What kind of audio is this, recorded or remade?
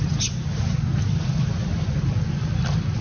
recorded